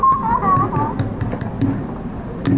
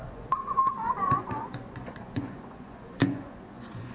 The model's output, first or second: second